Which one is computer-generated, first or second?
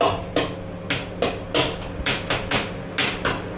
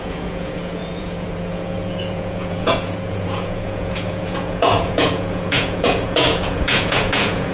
second